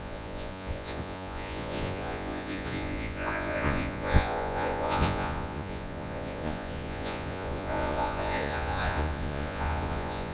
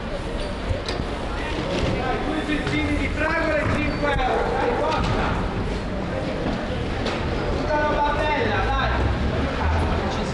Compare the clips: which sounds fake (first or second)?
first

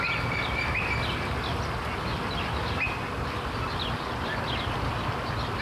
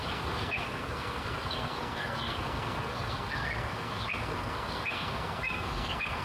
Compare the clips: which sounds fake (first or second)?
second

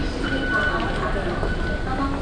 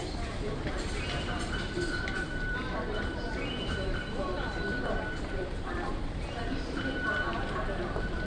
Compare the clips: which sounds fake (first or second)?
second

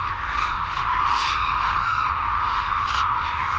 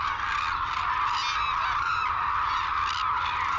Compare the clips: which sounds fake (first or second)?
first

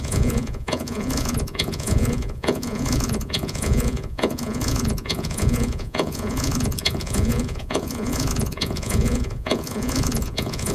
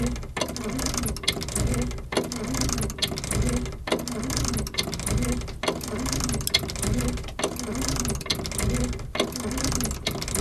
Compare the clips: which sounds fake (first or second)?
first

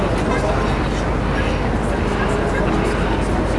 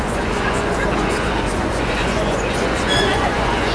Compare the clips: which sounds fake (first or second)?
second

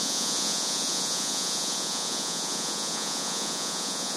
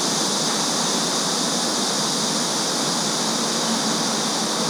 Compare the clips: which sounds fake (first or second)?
first